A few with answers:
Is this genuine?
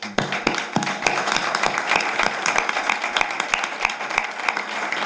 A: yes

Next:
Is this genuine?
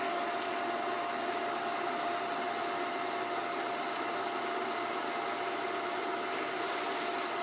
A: yes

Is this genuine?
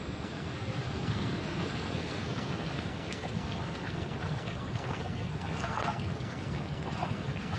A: no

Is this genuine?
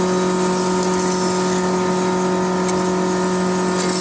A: yes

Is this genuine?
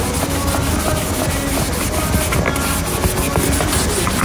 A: yes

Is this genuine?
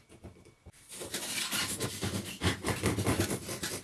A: yes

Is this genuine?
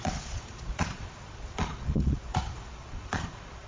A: no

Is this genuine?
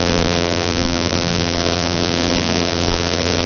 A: no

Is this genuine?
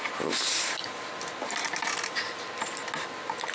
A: yes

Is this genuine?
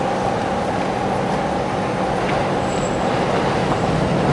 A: yes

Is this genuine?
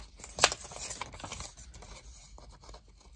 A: yes